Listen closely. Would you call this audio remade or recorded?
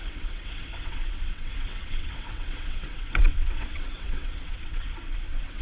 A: remade